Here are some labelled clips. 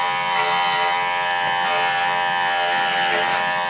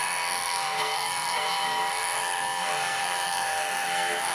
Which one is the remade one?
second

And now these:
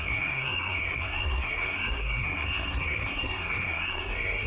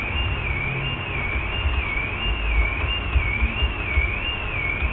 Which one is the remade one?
first